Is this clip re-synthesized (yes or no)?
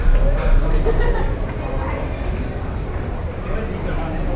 no